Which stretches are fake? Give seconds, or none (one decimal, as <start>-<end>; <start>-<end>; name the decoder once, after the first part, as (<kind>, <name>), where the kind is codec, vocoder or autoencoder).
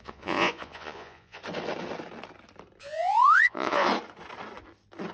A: 0.0-1.4 (vocoder, Vocos); 2.8-3.9